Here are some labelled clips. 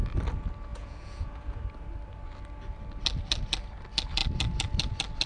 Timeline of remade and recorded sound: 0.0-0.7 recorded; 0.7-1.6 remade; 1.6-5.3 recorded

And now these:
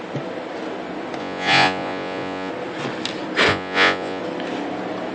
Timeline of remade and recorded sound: 0.0-1.2 recorded; 1.2-2.5 remade; 2.5-3.5 recorded; 3.5-4.2 remade; 4.2-5.1 recorded

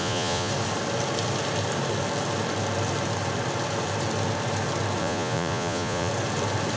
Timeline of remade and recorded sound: 0.0-0.5 remade; 0.5-5.0 recorded; 5.0-6.1 remade; 6.1-6.8 recorded